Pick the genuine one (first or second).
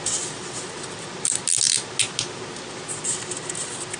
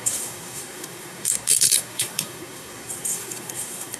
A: first